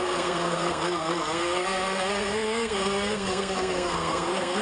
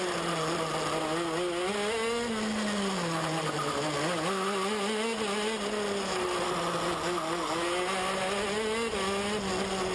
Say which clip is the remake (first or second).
first